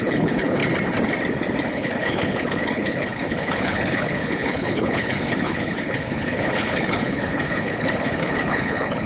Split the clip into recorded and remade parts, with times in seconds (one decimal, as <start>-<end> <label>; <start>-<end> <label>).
0.0-0.6 remade; 0.6-1.7 recorded; 1.7-9.1 remade